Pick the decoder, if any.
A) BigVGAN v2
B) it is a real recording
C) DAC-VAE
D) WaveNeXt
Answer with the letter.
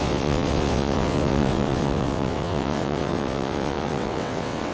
D